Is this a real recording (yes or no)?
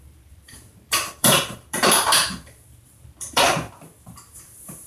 no